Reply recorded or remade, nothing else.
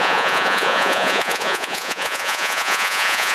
remade